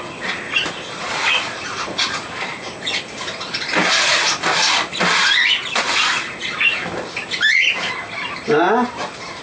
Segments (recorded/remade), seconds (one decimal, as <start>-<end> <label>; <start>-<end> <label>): 0.0-9.4 recorded

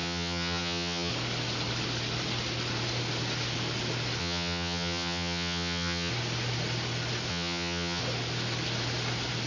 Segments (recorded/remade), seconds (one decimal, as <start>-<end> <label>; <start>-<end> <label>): 0.0-1.1 remade; 1.1-4.2 recorded; 4.2-6.1 remade; 6.1-7.3 recorded; 7.3-8.0 remade; 8.0-9.5 recorded

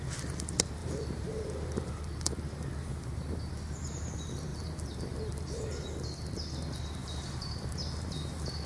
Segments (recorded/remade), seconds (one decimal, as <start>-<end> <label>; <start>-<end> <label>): 0.0-0.8 recorded; 0.8-1.9 remade; 1.9-2.9 recorded; 2.9-3.5 remade; 3.5-4.5 recorded; 4.5-5.7 remade; 5.7-7.0 recorded; 7.0-8.1 remade; 8.1-8.7 recorded

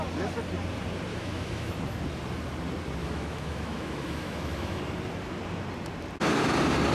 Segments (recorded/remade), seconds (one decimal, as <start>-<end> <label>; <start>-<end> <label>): 0.0-1.1 recorded; 1.1-1.7 remade; 1.7-3.0 recorded; 3.0-4.8 remade; 4.8-6.9 recorded

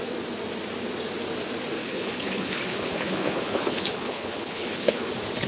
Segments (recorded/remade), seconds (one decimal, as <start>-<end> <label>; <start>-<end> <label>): 0.0-1.8 recorded; 1.8-5.1 remade; 5.1-5.5 recorded

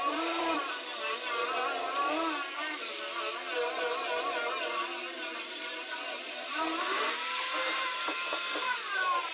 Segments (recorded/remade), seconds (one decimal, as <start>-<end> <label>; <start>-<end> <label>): 0.0-0.9 remade; 0.9-5.0 recorded; 5.0-9.3 remade